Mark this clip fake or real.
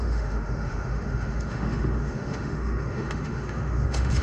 fake